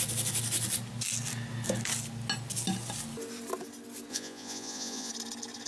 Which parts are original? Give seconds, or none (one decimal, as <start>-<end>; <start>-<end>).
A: 0.0-4.1; 5.1-5.7

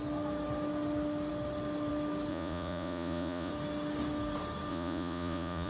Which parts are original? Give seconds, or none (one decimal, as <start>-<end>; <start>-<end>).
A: 0.0-2.3; 3.5-4.7

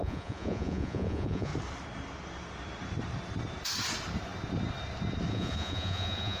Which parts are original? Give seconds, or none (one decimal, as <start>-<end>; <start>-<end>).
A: 1.5-5.3